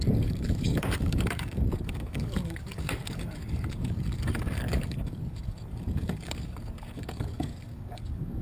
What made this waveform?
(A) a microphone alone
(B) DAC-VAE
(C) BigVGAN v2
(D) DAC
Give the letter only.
D